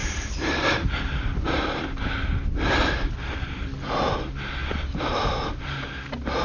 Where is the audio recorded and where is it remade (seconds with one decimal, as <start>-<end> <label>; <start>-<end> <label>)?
0.0-1.6 remade; 1.6-4.6 recorded; 4.6-6.0 remade; 6.0-6.4 recorded